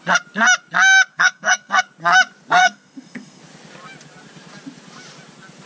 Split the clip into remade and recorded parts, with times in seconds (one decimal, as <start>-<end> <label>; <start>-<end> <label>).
0.0-1.1 recorded; 1.1-1.8 remade; 1.8-2.6 recorded; 2.6-3.4 remade; 3.4-5.7 recorded